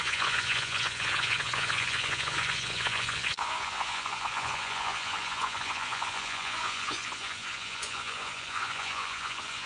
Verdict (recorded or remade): remade